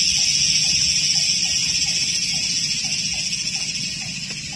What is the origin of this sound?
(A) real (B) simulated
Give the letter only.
A